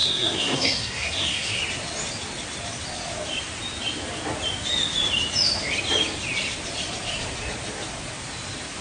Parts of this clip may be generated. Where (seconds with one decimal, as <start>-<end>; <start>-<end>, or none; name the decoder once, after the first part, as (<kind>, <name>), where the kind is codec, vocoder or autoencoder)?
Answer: 0.0-1.6 (codec, SNAC)